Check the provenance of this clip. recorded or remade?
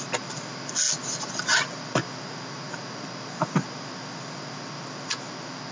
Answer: recorded